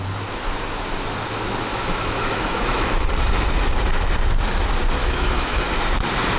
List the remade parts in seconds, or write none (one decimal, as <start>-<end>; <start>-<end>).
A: 1.7-3.1; 5.0-5.6